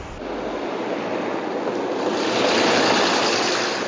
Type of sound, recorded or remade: recorded